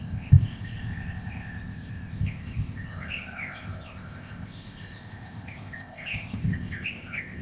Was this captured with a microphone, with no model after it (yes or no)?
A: no